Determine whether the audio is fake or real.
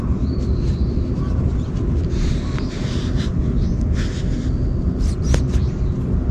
real